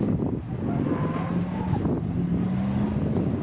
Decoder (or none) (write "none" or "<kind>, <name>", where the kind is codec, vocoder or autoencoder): none